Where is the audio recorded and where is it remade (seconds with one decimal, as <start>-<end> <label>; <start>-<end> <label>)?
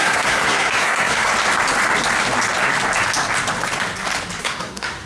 0.0-1.3 remade; 1.3-4.4 recorded; 4.4-5.1 remade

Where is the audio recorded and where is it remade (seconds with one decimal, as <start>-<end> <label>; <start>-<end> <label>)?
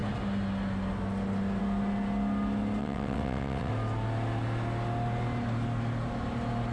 0.0-2.8 recorded; 2.8-3.7 remade; 3.7-6.7 recorded